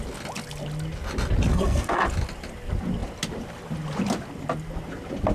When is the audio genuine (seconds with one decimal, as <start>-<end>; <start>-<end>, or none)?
0.0-1.5; 2.0-5.3